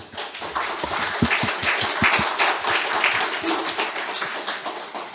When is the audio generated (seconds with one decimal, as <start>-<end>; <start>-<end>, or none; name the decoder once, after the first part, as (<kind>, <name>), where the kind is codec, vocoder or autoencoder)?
none